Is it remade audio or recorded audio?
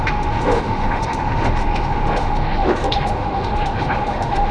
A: remade